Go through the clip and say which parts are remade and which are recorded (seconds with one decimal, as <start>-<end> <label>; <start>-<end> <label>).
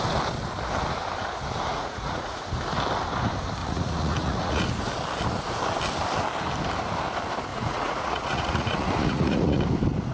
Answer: 0.0-1.7 recorded; 1.7-2.4 remade; 2.4-3.6 recorded; 3.6-4.6 remade; 4.6-7.5 recorded; 7.5-9.6 remade; 9.6-10.1 recorded